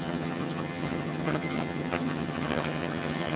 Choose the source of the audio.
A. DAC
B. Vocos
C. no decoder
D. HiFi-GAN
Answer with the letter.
D